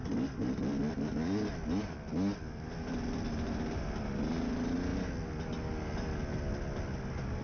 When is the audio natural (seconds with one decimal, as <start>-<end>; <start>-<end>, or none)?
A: 0.0-7.4